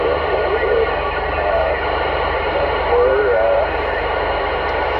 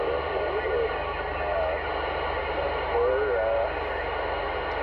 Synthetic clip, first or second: first